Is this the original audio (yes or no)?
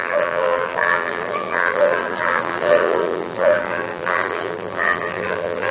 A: no